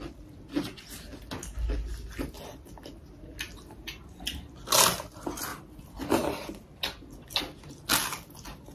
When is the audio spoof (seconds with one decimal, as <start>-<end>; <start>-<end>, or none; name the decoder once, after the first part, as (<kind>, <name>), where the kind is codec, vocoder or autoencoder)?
none